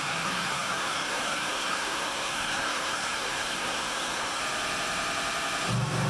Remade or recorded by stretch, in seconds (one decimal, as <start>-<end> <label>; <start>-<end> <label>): 0.0-4.4 remade; 4.4-6.1 recorded